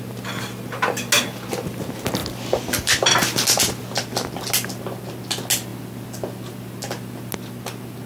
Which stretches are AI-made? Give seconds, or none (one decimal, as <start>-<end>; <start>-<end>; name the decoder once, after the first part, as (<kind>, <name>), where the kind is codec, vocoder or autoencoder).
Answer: none

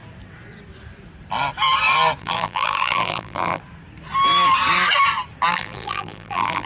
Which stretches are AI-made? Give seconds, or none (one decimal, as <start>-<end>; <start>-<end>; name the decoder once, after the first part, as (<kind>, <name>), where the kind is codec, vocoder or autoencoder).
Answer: 2.2-3.6 (vocoder, BigVGAN v2); 5.5-6.7

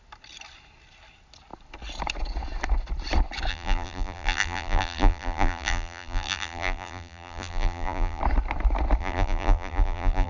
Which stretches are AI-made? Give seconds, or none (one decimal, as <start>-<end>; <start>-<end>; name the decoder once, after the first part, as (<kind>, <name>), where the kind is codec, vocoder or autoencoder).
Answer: 3.5-8.2 (vocoder, BigVGAN v2); 9.0-10.3

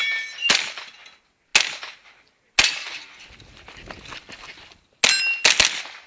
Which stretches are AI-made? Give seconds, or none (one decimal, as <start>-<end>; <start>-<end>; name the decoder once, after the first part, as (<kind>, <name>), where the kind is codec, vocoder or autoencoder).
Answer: 0.0-0.8 (vocoder, BigVGAN v2)

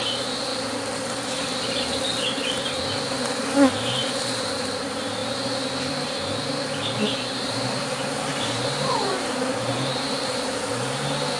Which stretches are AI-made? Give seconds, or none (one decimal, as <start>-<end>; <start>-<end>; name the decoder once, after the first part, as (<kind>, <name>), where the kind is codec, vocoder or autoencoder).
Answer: 8.3-10.7 (vocoder, BigVGAN v2)

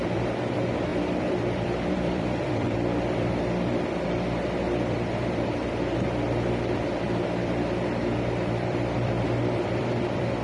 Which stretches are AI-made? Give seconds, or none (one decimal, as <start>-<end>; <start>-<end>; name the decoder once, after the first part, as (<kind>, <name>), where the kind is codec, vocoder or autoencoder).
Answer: 0.0-10.4 (vocoder, BigVGAN v2)

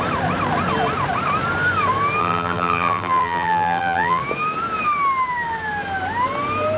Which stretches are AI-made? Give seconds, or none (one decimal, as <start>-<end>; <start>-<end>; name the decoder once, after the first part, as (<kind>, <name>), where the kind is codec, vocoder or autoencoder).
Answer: 2.2-4.2 (vocoder, BigVGAN v2)